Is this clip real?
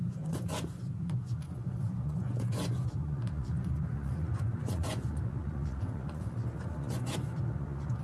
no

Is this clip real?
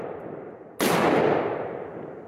yes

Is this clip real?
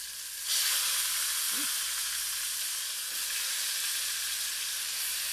yes